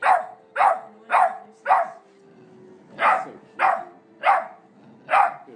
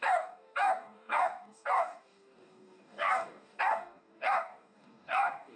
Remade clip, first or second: second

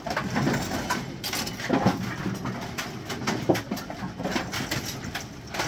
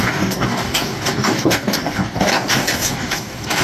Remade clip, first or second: second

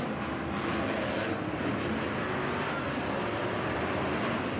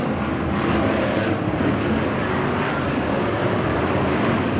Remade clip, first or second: second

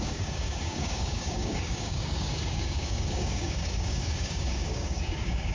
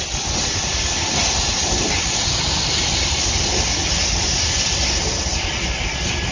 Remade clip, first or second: first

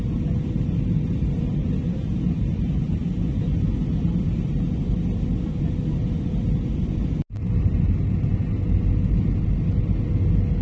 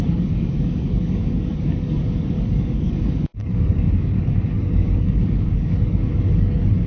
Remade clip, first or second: second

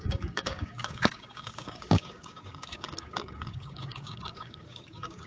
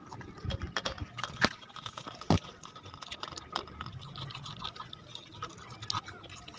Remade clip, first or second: first